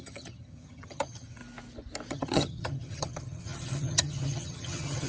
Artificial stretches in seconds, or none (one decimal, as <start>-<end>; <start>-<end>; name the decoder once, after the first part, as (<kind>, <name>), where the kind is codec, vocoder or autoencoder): 0.0-1.4 (vocoder, HiFi-GAN); 2.1-5.1